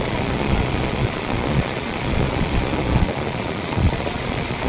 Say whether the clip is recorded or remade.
remade